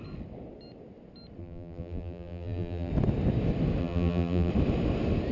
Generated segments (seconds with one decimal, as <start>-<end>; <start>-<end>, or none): 1.4-2.9; 3.8-4.5